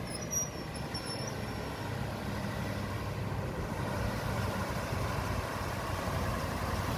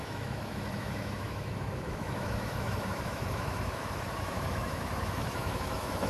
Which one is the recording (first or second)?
first